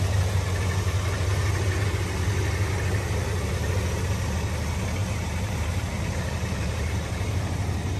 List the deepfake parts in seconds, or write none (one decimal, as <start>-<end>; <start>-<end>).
5.0-7.5